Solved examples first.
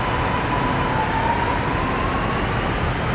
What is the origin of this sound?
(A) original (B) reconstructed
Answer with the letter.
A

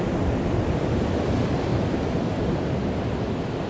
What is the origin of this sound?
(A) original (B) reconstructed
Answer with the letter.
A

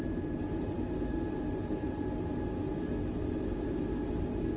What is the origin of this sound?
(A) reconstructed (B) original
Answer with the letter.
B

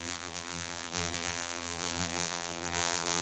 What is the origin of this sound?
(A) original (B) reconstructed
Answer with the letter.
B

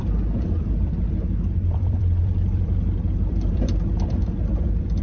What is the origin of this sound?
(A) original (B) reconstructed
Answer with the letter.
B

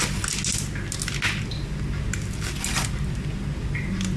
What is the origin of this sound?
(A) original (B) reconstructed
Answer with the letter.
A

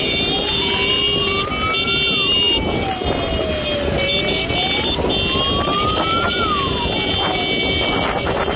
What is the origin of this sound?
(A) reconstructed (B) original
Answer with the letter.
B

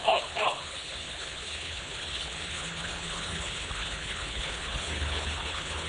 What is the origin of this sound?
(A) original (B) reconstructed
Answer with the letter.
B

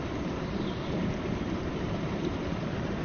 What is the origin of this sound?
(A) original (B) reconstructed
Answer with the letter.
B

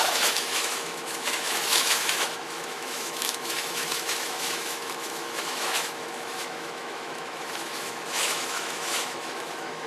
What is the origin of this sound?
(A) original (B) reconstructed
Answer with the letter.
B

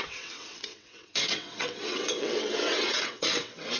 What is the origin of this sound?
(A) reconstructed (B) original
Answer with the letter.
A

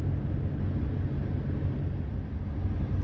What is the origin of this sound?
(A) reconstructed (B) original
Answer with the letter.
B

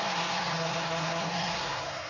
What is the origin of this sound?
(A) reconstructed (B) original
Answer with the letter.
A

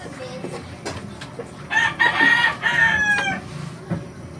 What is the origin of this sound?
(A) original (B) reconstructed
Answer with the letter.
A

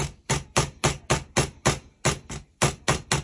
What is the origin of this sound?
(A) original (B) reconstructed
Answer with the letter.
A